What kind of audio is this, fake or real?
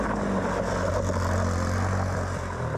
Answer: real